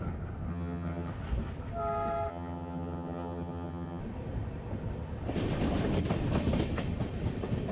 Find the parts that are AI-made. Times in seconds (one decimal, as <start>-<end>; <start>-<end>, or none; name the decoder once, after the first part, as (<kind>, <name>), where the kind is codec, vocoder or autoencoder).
0.5-1.1 (vocoder, HiFi-GAN); 2.3-4.0